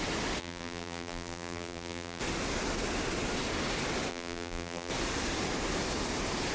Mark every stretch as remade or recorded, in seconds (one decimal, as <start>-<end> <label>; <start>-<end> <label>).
0.0-0.4 recorded; 0.4-2.2 remade; 2.2-4.1 recorded; 4.1-4.9 remade; 4.9-6.5 recorded